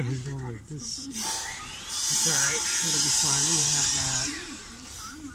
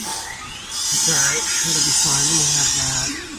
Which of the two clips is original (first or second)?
second